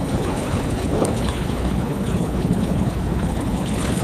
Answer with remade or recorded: remade